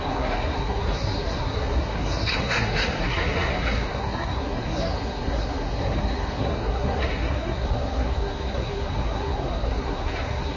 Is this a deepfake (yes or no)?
yes